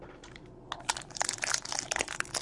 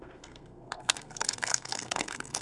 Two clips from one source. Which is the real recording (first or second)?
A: first